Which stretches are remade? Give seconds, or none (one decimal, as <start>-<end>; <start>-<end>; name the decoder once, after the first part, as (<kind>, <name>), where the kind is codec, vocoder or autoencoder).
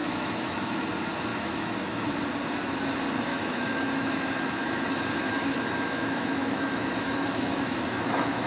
0.0-0.9 (autoencoder, DAC-VAE); 1.3-2.1; 3.3-8.5